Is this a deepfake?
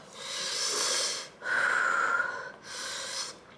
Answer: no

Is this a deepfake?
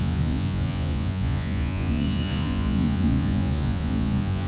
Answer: yes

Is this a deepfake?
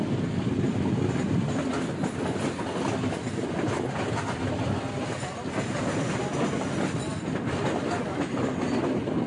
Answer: no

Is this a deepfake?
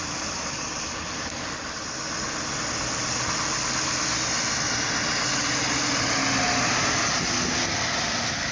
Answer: no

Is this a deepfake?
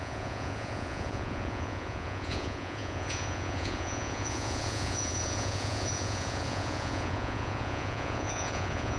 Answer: yes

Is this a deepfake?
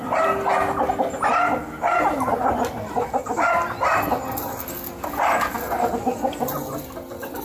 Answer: no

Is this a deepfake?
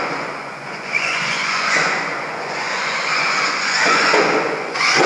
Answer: yes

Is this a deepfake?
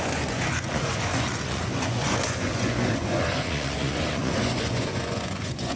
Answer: yes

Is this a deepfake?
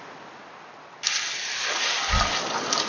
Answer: no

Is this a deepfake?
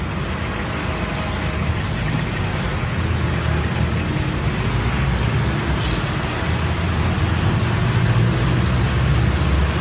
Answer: no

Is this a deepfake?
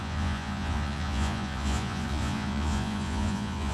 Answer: yes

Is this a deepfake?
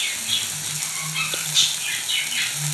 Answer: no